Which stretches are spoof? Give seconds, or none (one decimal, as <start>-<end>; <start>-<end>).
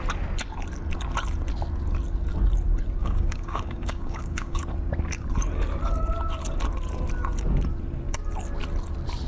3.0-4.6